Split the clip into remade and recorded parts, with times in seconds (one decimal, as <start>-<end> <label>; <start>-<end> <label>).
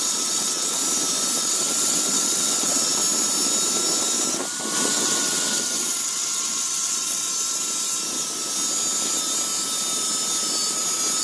0.0-0.8 remade; 0.8-1.4 recorded; 1.4-3.0 remade; 3.0-4.9 recorded; 4.9-7.3 remade; 7.3-11.2 recorded